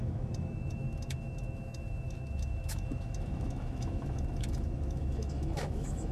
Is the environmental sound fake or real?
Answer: fake